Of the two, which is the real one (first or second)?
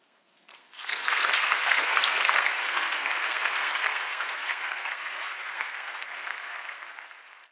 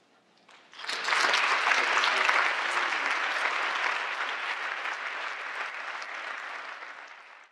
second